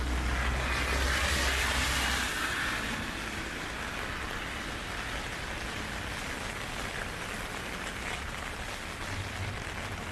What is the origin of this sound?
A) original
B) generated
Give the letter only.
A